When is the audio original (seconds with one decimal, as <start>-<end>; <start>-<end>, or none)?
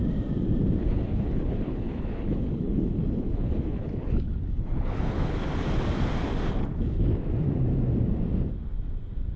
0.0-0.8; 5.4-9.4